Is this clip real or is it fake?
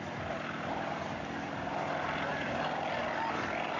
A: real